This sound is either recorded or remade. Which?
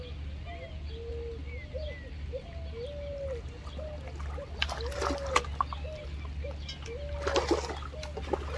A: recorded